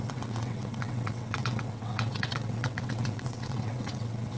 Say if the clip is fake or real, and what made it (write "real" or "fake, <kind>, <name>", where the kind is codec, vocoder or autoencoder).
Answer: fake, vocoder, WaveNeXt